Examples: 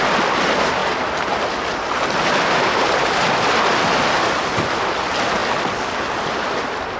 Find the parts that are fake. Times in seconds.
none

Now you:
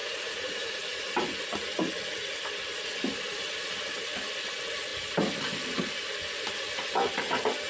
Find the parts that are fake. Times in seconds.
0.0-1.1

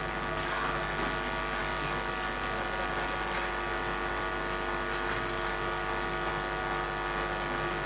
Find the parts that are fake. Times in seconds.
none

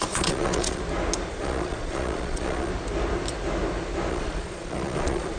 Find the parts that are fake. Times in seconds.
0.0-0.8; 1.3-2.7; 4.1-5.4